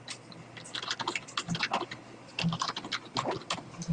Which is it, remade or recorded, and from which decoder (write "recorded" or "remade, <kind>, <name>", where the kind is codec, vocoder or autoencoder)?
recorded